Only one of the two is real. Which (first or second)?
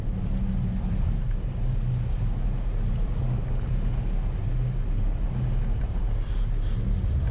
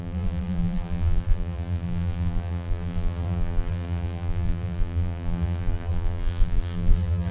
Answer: first